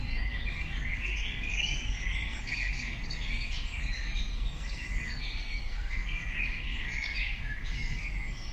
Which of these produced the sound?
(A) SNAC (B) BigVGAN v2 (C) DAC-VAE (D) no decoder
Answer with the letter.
A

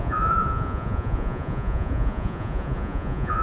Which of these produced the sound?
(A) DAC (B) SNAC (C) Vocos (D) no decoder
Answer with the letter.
C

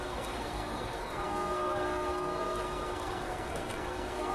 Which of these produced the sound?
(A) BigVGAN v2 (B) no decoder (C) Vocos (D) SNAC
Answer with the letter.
D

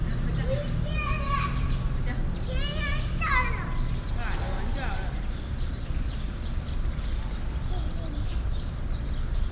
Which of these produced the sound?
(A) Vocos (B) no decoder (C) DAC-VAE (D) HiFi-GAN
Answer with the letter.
B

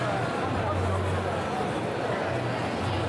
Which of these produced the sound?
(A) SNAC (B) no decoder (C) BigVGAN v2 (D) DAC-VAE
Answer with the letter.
B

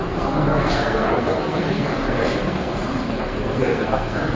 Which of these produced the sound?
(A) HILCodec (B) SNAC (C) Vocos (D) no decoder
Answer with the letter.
B